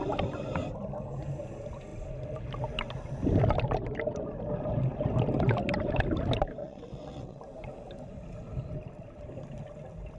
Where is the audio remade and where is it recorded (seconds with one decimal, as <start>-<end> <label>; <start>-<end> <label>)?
0.0-6.6 recorded; 6.6-7.4 remade; 7.4-10.2 recorded